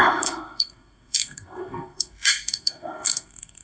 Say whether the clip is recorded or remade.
remade